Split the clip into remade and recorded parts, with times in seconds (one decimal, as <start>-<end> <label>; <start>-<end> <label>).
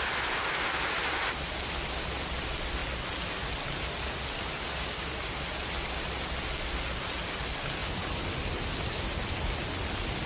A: 0.0-10.3 recorded